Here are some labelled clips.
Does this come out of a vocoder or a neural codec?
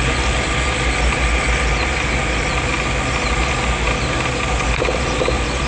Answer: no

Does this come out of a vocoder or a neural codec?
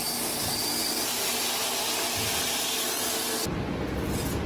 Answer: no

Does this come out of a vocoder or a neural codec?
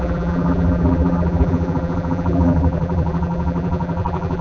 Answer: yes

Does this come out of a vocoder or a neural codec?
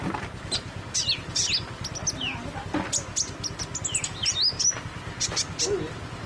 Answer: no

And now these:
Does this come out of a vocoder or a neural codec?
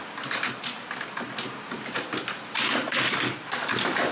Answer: no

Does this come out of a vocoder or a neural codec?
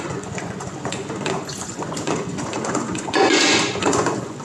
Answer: yes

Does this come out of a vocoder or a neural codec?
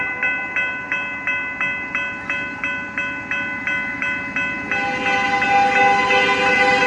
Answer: no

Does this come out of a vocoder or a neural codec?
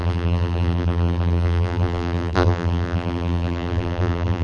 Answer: yes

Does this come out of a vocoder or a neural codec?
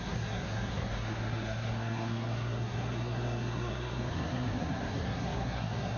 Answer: yes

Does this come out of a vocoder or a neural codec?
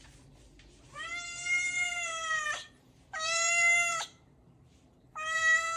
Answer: yes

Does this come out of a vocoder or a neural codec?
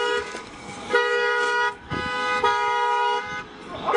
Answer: yes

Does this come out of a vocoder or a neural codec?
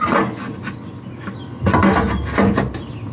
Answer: no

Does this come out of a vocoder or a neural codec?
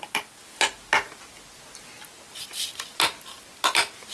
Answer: no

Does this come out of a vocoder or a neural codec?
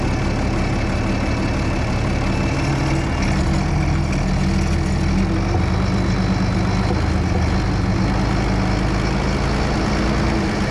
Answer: no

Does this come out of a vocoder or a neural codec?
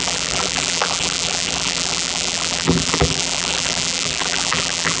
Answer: yes